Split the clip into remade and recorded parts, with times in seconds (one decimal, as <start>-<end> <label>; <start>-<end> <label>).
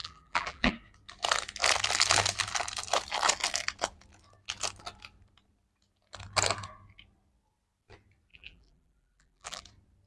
0.0-0.7 remade; 0.7-8.3 recorded; 8.3-9.6 remade; 9.6-10.1 recorded